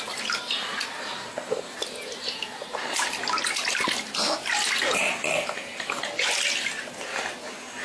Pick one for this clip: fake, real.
real